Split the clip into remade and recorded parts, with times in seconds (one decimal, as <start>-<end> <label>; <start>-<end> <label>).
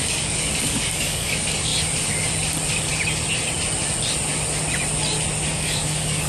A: 0.0-1.7 remade; 1.7-5.5 recorded; 5.5-6.3 remade